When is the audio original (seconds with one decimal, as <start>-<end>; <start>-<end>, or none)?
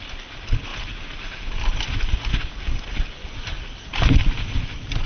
0.0-5.1